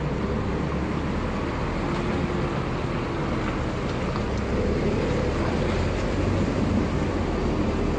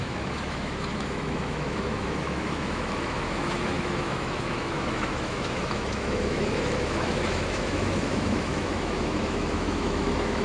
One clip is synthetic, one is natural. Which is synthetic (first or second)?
second